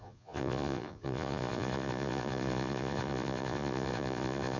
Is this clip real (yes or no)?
no